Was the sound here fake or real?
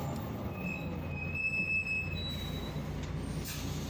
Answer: real